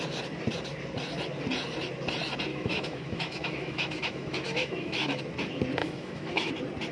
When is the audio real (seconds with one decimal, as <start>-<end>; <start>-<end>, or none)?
0.0-2.5; 5.2-5.8; 6.5-6.9